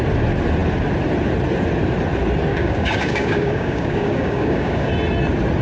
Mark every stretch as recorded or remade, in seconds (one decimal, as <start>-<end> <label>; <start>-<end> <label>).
0.0-2.5 recorded; 2.5-4.9 remade; 4.9-5.6 recorded